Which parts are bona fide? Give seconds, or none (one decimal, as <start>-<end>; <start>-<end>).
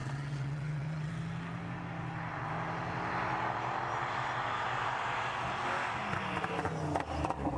1.1-7.6